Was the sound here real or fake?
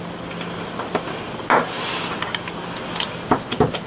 real